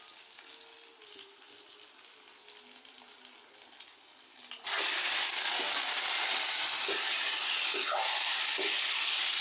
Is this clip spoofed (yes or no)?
no